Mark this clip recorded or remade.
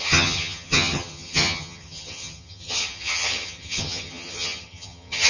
remade